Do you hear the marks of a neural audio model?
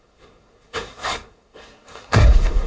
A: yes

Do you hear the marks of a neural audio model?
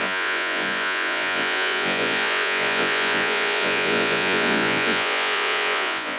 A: yes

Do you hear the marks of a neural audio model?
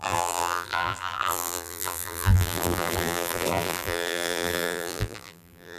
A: yes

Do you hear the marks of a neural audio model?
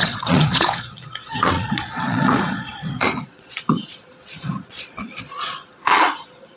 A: yes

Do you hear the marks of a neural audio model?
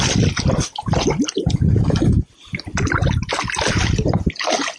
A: no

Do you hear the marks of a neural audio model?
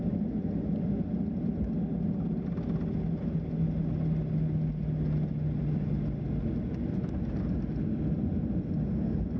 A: no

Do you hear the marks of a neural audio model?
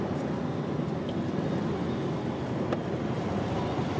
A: no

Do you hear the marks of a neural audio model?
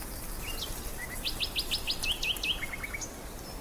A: no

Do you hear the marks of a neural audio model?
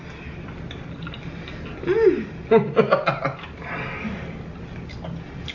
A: no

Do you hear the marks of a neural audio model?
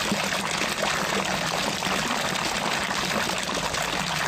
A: no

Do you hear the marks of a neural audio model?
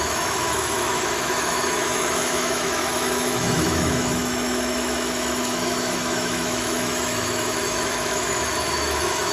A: yes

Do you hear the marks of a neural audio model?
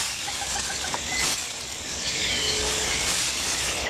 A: yes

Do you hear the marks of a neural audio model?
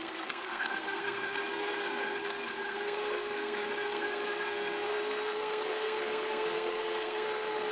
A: yes